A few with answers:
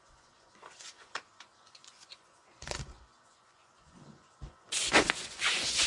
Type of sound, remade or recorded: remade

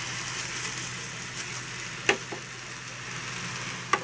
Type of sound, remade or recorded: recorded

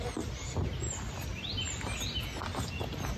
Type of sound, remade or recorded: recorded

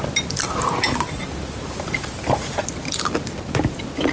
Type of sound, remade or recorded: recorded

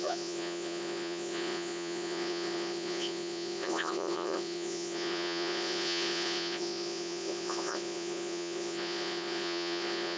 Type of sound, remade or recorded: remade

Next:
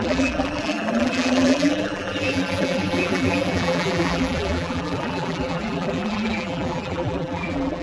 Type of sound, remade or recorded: remade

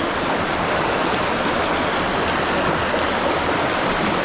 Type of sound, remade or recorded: recorded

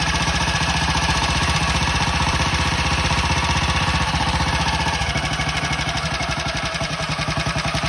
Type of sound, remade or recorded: remade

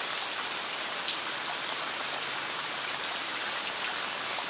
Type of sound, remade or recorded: recorded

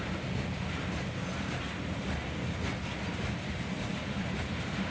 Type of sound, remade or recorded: recorded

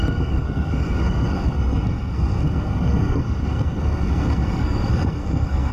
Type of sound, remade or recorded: remade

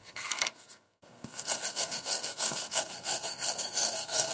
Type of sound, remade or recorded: remade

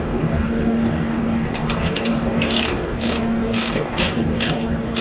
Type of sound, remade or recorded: remade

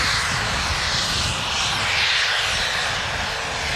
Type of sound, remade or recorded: recorded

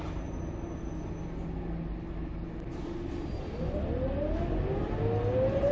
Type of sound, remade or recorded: recorded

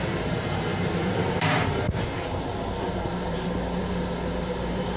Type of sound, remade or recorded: remade